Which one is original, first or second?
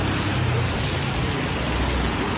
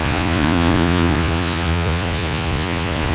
first